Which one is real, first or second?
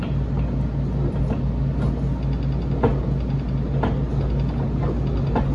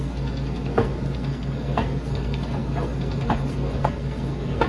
first